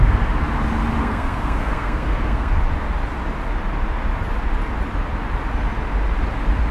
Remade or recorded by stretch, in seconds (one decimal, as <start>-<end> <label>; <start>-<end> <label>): 0.0-1.0 recorded; 1.0-2.5 remade; 2.5-6.7 recorded